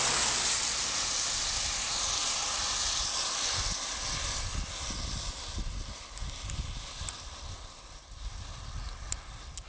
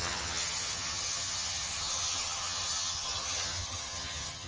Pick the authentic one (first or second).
first